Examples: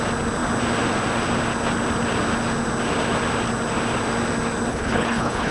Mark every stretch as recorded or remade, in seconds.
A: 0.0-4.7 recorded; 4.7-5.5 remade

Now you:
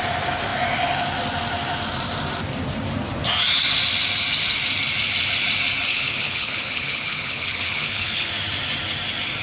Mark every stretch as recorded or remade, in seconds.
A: 0.0-5.9 recorded; 5.9-8.3 remade; 8.3-9.4 recorded

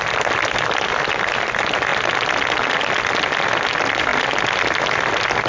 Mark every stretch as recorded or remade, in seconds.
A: 0.0-5.5 recorded

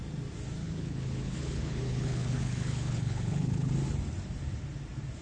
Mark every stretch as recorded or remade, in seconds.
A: 0.0-0.6 recorded; 0.6-3.7 remade; 3.7-5.2 recorded

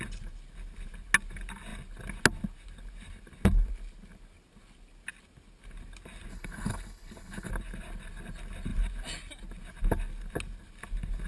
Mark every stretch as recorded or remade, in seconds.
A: 0.0-6.3 recorded; 6.3-7.5 remade; 7.5-11.3 recorded

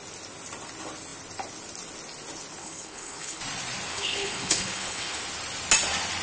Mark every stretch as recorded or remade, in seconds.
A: 0.0-2.6 recorded; 2.6-3.4 remade; 3.4-3.9 recorded; 3.9-5.2 remade; 5.2-6.2 recorded

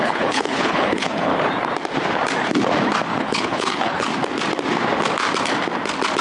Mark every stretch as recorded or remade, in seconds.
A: 0.0-1.3 remade; 1.3-3.2 recorded; 3.2-4.1 remade; 4.1-6.2 recorded

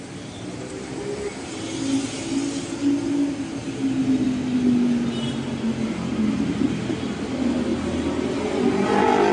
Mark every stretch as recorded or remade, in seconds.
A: 0.0-9.3 recorded